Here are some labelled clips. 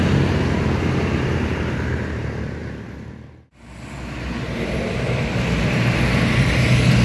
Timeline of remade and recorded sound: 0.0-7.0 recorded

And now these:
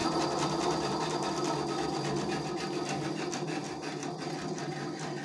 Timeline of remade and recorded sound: 0.0-5.2 recorded

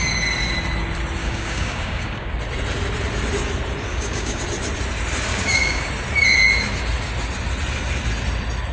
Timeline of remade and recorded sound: 0.0-1.2 recorded; 1.2-2.4 remade; 2.4-3.9 recorded; 3.9-4.4 remade; 4.4-5.3 recorded; 5.3-5.9 remade; 5.9-8.7 recorded

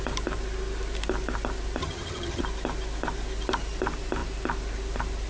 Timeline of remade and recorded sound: 0.0-1.8 recorded; 1.8-2.4 remade; 2.4-5.3 recorded

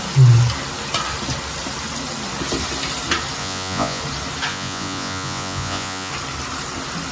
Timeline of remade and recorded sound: 0.0-3.4 recorded; 3.4-4.0 remade; 4.0-4.5 recorded; 4.5-6.1 remade; 6.1-7.1 recorded

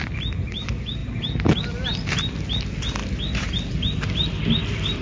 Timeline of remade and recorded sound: 0.0-5.0 recorded

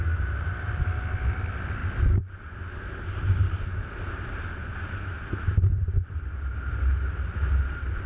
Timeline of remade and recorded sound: 0.0-8.1 recorded